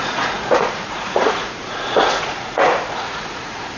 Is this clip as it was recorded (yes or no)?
no